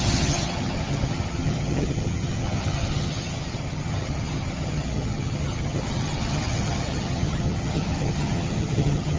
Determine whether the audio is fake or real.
fake